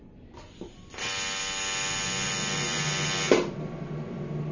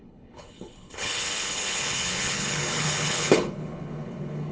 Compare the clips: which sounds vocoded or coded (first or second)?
second